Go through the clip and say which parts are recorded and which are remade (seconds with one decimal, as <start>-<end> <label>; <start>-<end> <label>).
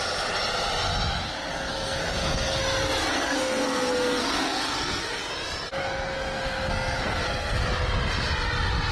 0.0-1.5 recorded; 1.5-2.6 remade; 2.6-3.1 recorded; 3.1-5.2 remade; 5.2-5.8 recorded; 5.8-7.6 remade; 7.6-8.9 recorded